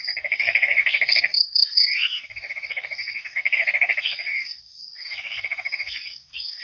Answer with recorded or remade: remade